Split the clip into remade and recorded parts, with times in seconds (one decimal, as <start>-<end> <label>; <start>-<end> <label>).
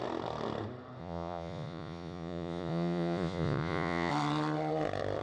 0.0-1.0 recorded; 1.0-4.1 remade; 4.1-5.2 recorded